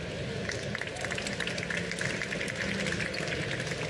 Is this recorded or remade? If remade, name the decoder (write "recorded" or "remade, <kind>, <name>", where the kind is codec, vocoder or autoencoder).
recorded